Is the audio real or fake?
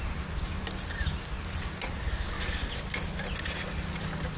real